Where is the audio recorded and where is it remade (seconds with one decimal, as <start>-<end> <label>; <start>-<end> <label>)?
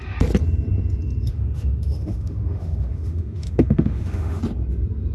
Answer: 0.0-1.3 recorded; 1.3-4.4 remade; 4.4-5.1 recorded